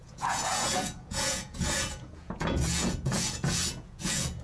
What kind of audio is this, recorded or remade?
remade